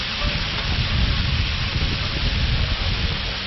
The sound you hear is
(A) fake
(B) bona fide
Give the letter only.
B